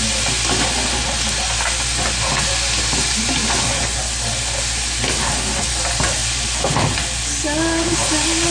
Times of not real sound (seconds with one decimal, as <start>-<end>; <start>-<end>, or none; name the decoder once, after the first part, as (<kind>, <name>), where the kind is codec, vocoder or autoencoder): none